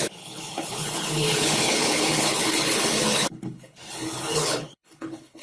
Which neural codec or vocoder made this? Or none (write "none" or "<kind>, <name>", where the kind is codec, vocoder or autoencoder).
codec, HILCodec